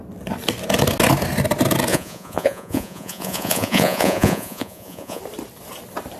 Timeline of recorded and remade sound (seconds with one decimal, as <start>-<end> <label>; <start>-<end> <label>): 0.0-1.9 recorded; 1.9-5.2 remade; 5.2-6.2 recorded